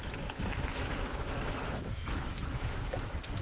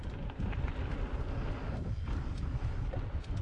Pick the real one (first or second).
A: second